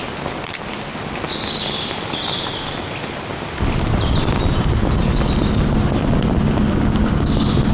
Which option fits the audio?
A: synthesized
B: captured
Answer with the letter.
B